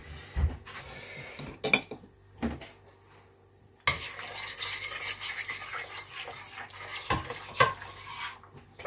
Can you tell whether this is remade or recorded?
recorded